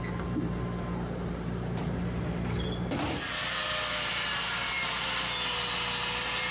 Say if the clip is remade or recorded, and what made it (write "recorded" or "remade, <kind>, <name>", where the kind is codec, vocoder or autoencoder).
recorded